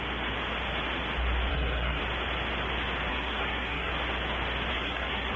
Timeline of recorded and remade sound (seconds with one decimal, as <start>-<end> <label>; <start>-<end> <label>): 0.0-1.5 recorded; 1.5-2.0 remade; 2.0-3.1 recorded; 3.1-3.9 remade; 3.9-4.7 recorded; 4.7-5.4 remade